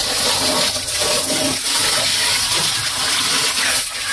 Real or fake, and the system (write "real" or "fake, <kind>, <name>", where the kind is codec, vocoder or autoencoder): real